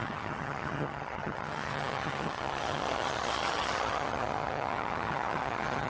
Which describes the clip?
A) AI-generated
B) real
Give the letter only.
A